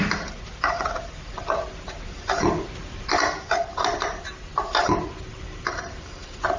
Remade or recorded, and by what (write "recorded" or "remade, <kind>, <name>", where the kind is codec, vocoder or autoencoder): recorded